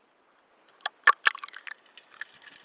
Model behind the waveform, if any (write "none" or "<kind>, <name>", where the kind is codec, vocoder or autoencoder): none